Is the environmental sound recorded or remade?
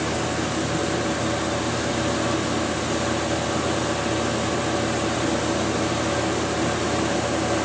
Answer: recorded